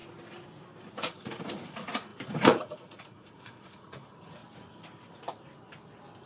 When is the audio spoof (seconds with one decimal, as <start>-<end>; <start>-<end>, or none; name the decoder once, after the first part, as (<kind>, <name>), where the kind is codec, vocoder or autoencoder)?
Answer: 0.9-4.4 (vocoder, Vocos)